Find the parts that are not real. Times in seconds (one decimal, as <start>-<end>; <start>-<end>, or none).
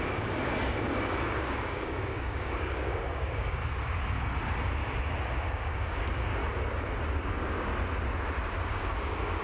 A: 0.0-3.6; 5.5-6.4; 7.3-7.7; 8.7-9.4